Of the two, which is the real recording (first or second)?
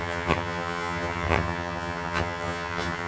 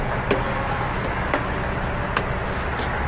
second